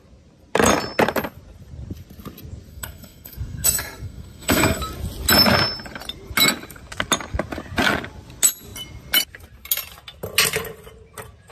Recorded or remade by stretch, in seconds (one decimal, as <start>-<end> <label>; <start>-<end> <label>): 0.0-2.7 recorded; 2.7-4.8 remade; 4.8-11.5 recorded